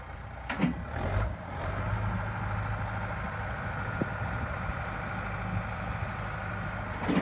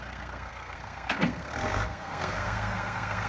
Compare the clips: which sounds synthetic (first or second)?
second